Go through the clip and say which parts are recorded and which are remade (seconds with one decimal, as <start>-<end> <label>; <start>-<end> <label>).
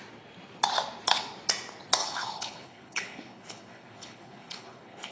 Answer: 0.0-2.0 recorded; 2.0-5.1 remade